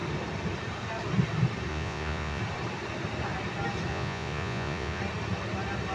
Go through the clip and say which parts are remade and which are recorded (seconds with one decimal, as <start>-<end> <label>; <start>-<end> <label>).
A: 0.0-1.7 recorded; 1.7-2.4 remade; 2.4-3.9 recorded; 3.9-5.0 remade; 5.0-5.9 recorded